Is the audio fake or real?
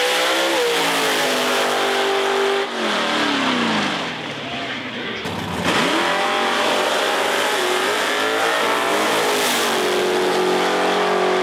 real